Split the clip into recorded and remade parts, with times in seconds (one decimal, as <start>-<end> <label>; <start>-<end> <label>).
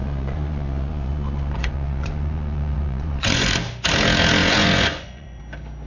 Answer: 0.0-3.5 remade; 3.5-4.4 recorded; 4.4-5.4 remade; 5.4-5.9 recorded